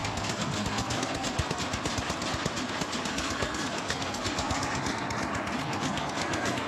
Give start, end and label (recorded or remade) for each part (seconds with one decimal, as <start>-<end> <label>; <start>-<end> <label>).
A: 0.0-1.6 remade; 1.6-3.1 recorded; 3.1-4.8 remade; 4.8-5.6 recorded; 5.6-6.7 remade